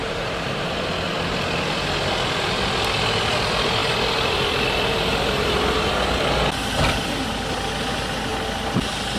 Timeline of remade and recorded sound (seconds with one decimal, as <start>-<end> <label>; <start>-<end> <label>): 0.0-0.8 remade; 0.8-9.2 recorded